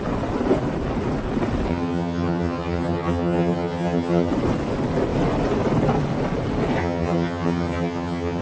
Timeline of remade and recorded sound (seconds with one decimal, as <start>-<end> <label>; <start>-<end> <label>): 0.0-1.7 recorded; 1.7-4.3 remade; 4.3-6.8 recorded; 6.8-8.4 remade

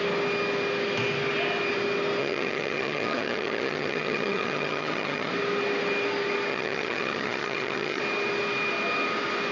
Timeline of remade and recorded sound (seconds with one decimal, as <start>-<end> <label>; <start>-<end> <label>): 0.0-2.2 recorded; 2.2-5.3 remade; 5.3-6.5 recorded; 6.5-8.0 remade; 8.0-9.5 recorded

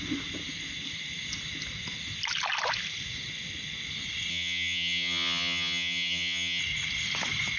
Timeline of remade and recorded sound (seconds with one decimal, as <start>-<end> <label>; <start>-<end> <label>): 0.0-4.3 recorded; 4.3-6.6 remade; 6.6-7.6 recorded

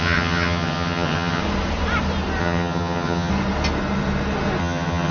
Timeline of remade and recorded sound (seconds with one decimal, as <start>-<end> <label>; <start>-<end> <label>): 0.0-1.4 remade; 1.4-2.4 recorded; 2.4-3.3 remade; 3.3-4.6 recorded; 4.6-5.1 remade

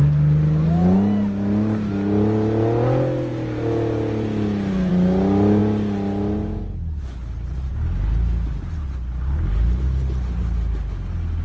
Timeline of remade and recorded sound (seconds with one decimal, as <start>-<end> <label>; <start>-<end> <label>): 0.0-11.4 recorded

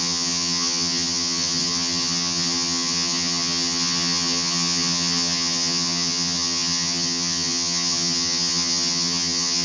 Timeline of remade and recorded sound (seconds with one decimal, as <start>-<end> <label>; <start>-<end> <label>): 0.0-9.6 remade

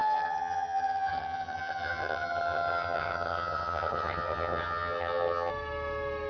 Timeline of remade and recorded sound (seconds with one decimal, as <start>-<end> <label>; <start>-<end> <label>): 0.0-5.5 remade; 5.5-6.3 recorded